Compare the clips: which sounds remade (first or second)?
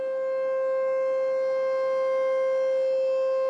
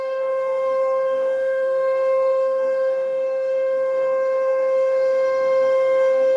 second